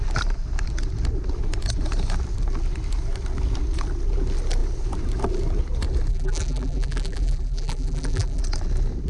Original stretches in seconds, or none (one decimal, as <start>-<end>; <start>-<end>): 0.0-6.1; 8.4-9.1